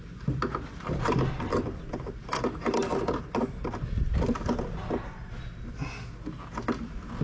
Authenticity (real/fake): real